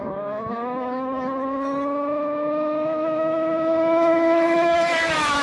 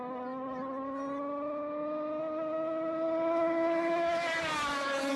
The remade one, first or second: first